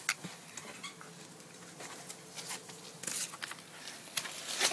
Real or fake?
real